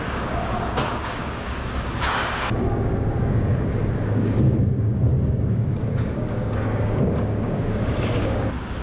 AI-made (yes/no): yes